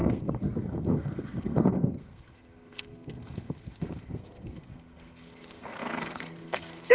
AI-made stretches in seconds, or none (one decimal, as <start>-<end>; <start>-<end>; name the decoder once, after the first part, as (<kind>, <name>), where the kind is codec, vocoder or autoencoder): 0.0-6.9 (codec, SNAC)